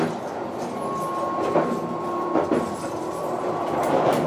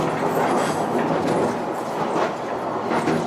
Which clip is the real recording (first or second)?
second